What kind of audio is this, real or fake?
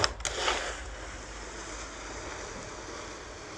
real